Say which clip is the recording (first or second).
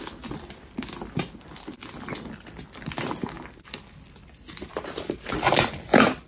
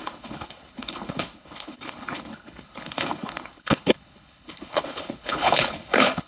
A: first